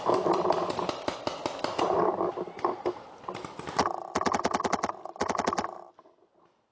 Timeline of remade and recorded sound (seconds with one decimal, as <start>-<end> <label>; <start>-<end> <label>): 0.0-6.7 recorded